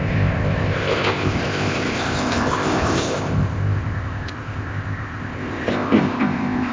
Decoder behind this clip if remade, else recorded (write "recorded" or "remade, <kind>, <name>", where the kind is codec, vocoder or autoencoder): remade, codec, ZipCodec